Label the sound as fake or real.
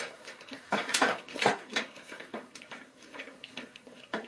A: fake